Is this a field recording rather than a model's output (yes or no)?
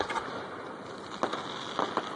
yes